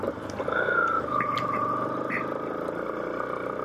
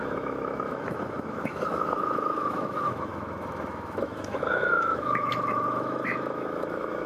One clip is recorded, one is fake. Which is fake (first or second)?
second